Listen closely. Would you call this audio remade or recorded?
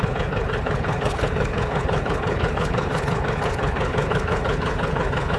remade